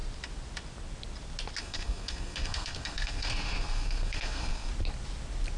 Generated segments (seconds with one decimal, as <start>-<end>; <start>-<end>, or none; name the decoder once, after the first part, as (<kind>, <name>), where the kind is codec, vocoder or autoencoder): 1.6-4.7 (codec, SNAC)